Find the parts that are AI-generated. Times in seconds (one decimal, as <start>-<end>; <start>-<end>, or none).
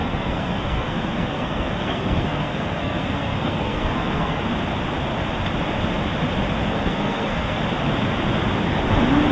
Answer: 0.0-4.4; 6.6-7.6